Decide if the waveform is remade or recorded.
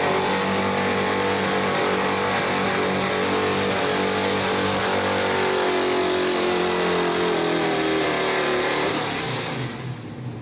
recorded